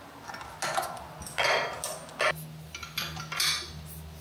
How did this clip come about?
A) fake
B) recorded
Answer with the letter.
B